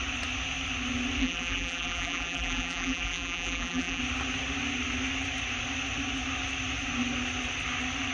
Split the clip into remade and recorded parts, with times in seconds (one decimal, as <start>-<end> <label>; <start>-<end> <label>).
0.0-1.2 recorded; 1.2-4.0 remade; 4.0-8.1 recorded